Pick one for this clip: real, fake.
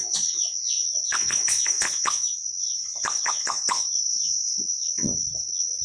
fake